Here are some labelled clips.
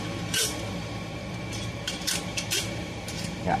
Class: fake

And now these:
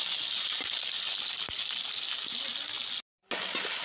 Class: real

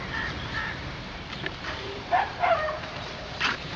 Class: fake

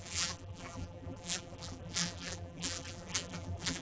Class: fake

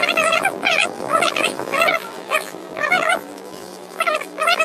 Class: fake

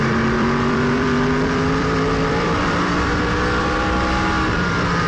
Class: fake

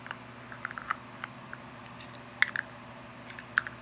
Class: real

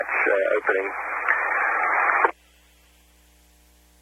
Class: real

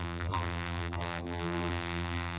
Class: fake